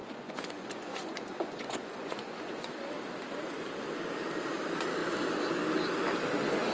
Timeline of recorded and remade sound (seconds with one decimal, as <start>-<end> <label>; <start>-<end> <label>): 0.0-2.7 remade; 2.7-6.7 recorded